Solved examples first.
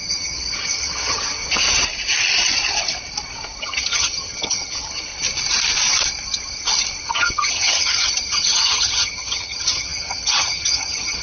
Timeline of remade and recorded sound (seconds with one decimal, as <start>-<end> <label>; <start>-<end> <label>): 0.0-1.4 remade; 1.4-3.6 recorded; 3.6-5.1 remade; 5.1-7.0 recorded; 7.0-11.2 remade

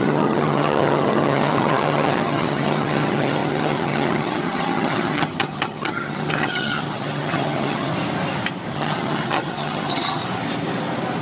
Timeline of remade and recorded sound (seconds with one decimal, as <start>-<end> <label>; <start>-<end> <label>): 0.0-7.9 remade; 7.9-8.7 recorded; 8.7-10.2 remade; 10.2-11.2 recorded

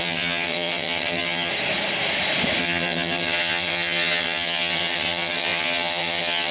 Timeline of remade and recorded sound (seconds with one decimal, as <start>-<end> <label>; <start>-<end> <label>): 0.0-1.5 remade; 1.5-2.6 recorded; 2.6-6.5 remade

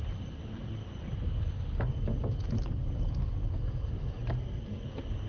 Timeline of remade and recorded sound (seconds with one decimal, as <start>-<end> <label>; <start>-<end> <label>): 0.0-5.3 recorded

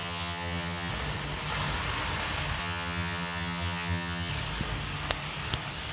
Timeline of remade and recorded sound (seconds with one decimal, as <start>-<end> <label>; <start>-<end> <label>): 0.0-0.9 remade; 0.9-2.6 recorded; 2.6-4.3 remade; 4.3-5.9 recorded

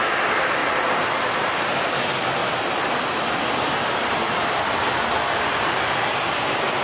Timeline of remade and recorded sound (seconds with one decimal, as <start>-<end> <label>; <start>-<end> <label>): 0.0-6.8 recorded